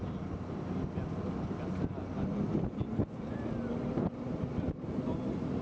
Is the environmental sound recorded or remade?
recorded